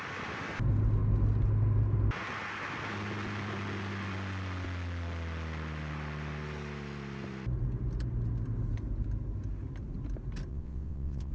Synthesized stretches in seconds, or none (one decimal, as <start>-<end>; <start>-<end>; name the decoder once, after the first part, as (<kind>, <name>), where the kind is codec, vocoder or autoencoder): 10.5-11.3 (vocoder, WaveNeXt)